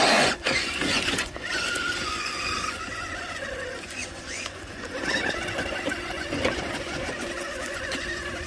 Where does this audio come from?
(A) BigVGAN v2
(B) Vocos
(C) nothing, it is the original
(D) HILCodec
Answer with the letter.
B